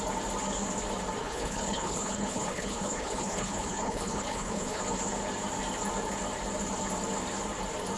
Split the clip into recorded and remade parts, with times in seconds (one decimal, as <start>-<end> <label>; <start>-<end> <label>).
0.0-1.2 recorded; 1.2-4.8 remade; 4.8-8.0 recorded